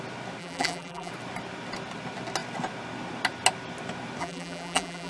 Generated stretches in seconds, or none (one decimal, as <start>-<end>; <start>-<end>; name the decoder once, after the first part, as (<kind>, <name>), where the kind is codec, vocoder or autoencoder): 0.4-1.1 (vocoder, BigVGAN v2); 4.2-5.1